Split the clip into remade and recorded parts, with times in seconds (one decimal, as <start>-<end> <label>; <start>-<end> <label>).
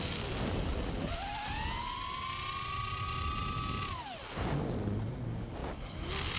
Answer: 0.0-6.4 recorded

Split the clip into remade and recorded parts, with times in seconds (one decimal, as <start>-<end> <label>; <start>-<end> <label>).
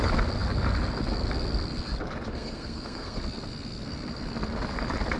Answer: 0.0-2.3 recorded; 2.3-3.2 remade; 3.2-5.2 recorded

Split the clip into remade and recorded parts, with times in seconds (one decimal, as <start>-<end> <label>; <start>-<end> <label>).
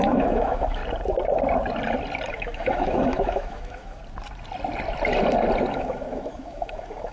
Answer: 0.0-0.8 remade; 0.8-2.3 recorded; 2.3-4.0 remade; 4.0-5.7 recorded; 5.7-7.1 remade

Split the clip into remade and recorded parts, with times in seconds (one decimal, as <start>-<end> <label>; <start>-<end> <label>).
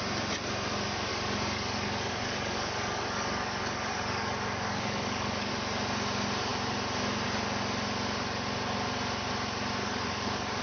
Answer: 0.0-1.1 recorded; 1.1-5.5 remade; 5.5-9.8 recorded; 9.8-10.6 remade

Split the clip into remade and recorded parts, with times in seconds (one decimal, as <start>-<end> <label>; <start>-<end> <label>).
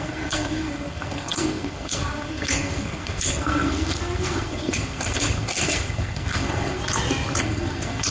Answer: 0.0-6.8 remade; 6.8-7.4 recorded; 7.4-8.1 remade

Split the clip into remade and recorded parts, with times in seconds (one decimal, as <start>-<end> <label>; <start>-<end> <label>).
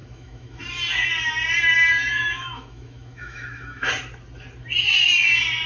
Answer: 0.0-0.6 remade; 0.6-1.9 recorded; 1.9-3.9 remade; 3.9-5.7 recorded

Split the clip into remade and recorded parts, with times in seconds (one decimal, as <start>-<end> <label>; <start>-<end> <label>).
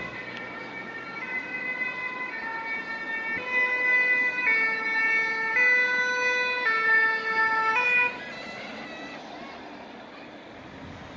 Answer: 0.0-11.2 recorded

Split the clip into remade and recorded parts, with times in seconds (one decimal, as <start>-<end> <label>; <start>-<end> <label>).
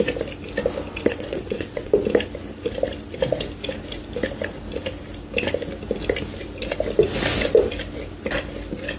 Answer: 0.0-1.1 recorded; 1.1-1.9 remade; 1.9-9.0 recorded